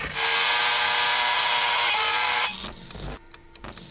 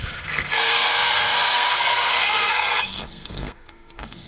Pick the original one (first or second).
first